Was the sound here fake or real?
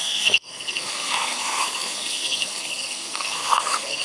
fake